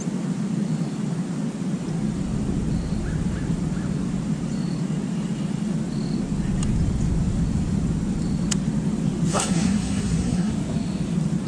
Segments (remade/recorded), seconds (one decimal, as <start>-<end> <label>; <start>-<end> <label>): 0.0-9.3 recorded; 9.3-10.5 remade; 10.5-11.5 recorded